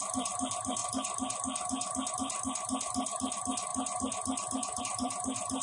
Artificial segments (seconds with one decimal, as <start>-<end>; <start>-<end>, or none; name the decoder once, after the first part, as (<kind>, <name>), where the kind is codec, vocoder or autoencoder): 0.0-0.8 (vocoder, BigVGAN v2); 2.1-3.7; 4.8-5.6